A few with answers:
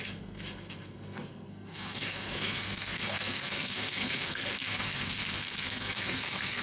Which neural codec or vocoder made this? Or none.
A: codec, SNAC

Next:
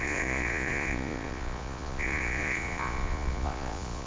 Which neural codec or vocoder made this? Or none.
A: vocoder, Vocos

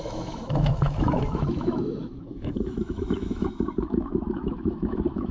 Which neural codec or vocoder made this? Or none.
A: autoencoder, DAC-VAE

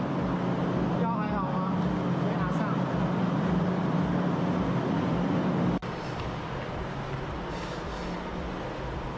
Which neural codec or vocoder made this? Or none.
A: none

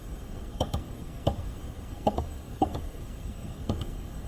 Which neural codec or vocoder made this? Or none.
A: codec, SNAC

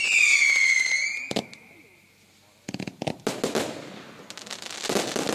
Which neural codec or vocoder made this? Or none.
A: none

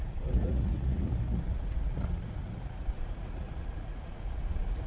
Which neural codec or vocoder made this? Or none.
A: vocoder, Vocos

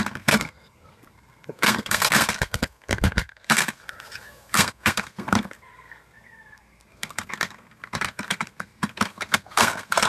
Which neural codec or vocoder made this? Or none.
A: codec, SNAC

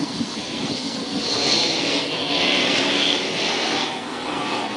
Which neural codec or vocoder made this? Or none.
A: codec, SNAC